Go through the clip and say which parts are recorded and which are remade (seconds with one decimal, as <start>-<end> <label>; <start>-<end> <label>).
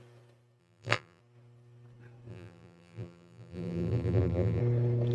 0.0-0.6 recorded; 0.6-1.2 remade; 1.2-2.3 recorded; 2.3-4.6 remade; 4.6-5.1 recorded